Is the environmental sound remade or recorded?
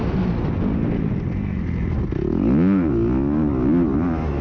recorded